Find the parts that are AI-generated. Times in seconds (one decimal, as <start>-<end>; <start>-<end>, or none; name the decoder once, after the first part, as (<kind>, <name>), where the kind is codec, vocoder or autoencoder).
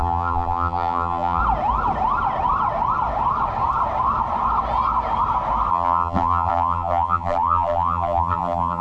0.0-1.4 (vocoder, BigVGAN v2); 5.7-8.8